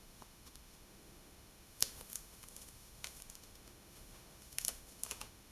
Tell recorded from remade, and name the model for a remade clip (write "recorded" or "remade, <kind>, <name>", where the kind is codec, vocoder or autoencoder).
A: remade, autoencoder, DAC-VAE